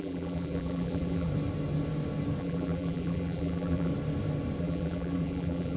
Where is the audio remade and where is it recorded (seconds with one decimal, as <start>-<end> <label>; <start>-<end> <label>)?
0.0-1.3 remade; 1.3-2.4 recorded; 2.4-3.9 remade; 3.9-4.6 recorded; 4.6-5.8 remade